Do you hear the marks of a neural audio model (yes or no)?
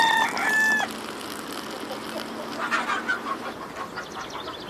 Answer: no